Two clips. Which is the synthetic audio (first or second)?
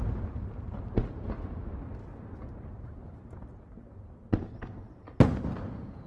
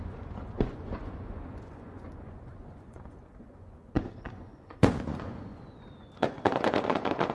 second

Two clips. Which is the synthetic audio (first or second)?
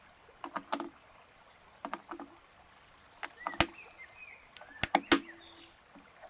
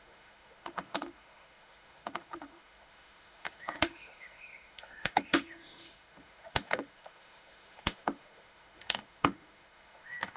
second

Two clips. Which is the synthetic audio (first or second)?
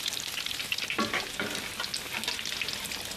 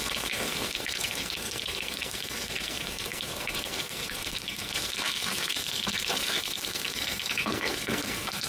second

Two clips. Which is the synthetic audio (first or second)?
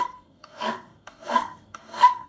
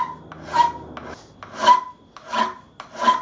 first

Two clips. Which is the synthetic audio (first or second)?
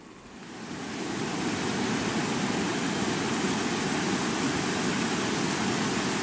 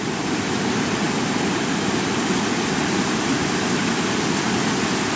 second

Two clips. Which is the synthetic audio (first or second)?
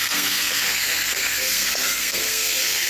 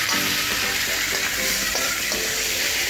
first